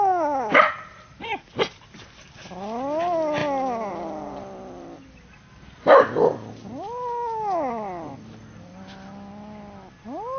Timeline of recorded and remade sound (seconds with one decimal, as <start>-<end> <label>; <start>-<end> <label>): 0.0-10.4 recorded